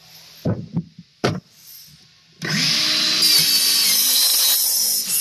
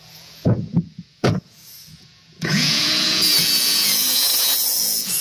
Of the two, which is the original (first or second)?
first